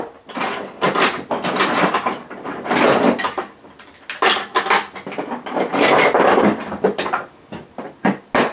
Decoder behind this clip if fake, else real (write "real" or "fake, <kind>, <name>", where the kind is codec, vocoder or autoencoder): real